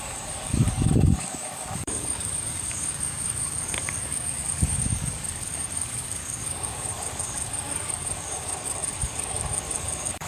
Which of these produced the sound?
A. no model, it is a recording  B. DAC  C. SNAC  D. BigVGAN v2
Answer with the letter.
B